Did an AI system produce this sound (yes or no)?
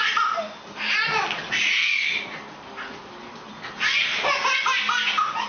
no